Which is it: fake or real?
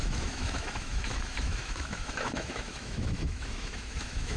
fake